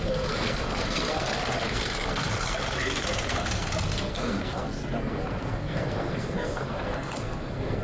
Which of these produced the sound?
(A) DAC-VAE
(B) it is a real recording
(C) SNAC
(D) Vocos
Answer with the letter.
C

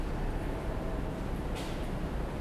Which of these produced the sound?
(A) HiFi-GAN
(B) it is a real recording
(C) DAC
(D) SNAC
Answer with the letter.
B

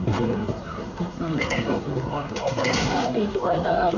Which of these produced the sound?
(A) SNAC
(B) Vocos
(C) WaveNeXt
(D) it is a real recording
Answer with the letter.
A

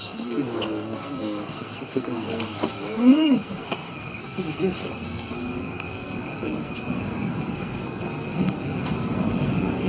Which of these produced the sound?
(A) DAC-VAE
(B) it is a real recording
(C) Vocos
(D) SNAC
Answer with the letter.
D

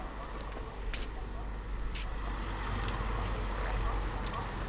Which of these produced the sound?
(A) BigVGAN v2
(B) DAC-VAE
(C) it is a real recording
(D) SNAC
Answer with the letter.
C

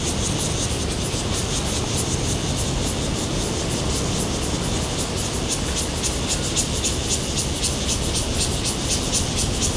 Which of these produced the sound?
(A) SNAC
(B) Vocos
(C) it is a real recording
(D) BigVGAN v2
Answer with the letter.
C